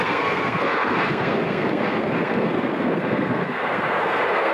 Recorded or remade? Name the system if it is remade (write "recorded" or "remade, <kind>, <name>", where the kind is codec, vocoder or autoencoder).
remade, codec, SNAC